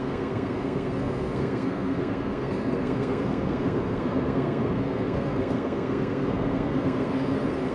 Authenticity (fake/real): fake